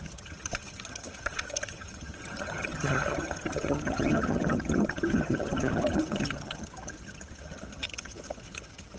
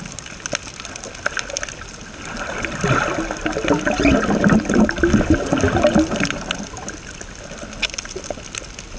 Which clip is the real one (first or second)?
second